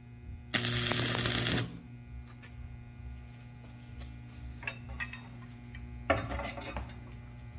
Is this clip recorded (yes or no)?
yes